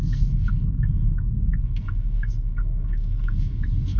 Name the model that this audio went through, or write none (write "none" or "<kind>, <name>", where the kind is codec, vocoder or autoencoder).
codec, SNAC